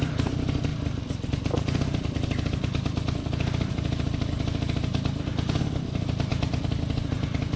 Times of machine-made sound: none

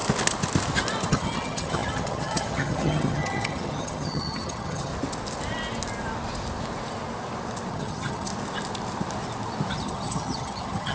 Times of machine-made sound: 1.1-4.9 (vocoder, HiFi-GAN); 7.7-8.3; 9.7-10.9

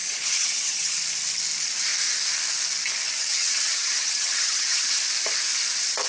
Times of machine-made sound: 0.0-1.0 (vocoder, HiFi-GAN); 3.3-5.0

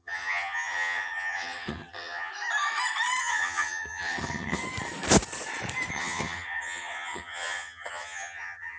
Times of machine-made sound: 0.0-2.3 (vocoder, HiFi-GAN); 3.2-4.6; 5.9-8.8